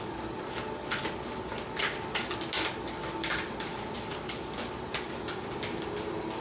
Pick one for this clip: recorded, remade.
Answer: recorded